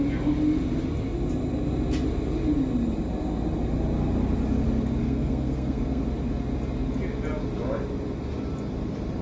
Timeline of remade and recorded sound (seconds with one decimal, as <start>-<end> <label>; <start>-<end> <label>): 0.0-5.0 recorded; 5.0-6.0 remade; 6.0-9.2 recorded

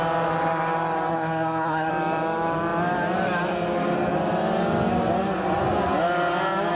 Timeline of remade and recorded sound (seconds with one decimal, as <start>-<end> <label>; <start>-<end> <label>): 0.0-1.1 recorded; 1.1-1.9 remade; 1.9-6.7 recorded

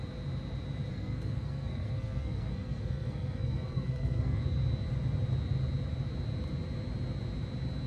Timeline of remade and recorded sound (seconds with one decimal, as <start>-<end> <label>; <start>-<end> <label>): 0.0-0.9 recorded; 0.9-4.4 remade; 4.4-7.9 recorded

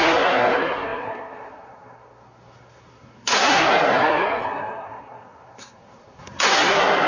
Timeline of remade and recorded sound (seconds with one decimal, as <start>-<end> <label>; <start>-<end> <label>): 0.0-7.1 remade